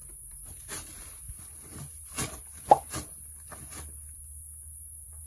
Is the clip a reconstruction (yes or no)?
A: no